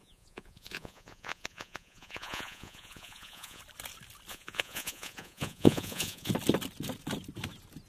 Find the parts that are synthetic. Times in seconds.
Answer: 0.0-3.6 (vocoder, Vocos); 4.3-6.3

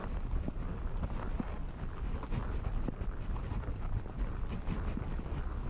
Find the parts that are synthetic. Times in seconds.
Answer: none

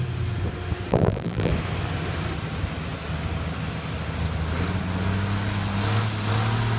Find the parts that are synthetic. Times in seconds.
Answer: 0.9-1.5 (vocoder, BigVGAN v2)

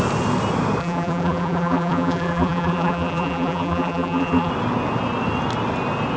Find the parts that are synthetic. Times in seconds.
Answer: 0.8-4.5 (vocoder, BigVGAN v2)

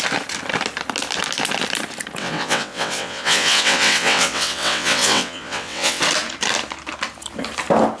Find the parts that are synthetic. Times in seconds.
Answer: 2.2-6.0 (vocoder, WaveNeXt)

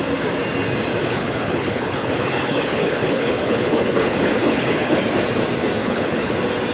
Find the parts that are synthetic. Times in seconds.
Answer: 1.0-5.0 (codec, HILCodec); 5.8-6.3